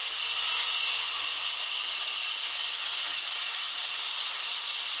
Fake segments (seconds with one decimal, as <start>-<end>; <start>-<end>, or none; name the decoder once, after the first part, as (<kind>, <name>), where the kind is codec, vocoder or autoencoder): 3.1-4.1 (vocoder, BigVGAN v2)